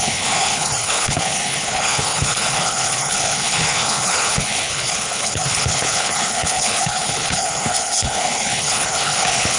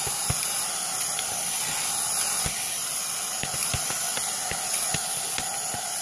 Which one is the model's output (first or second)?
first